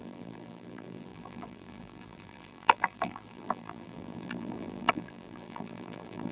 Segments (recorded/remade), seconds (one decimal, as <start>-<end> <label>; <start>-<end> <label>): 0.0-6.3 remade